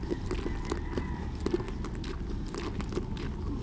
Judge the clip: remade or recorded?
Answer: recorded